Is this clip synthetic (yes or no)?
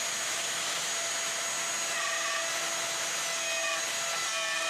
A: no